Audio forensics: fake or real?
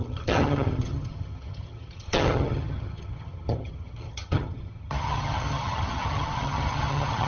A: fake